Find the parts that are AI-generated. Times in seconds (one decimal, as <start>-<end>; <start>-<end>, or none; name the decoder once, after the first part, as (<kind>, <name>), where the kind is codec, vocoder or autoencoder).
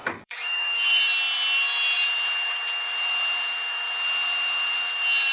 0.0-1.0 (codec, DAC)